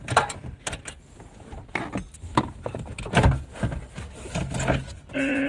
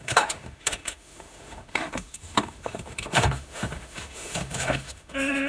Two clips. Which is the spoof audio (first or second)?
second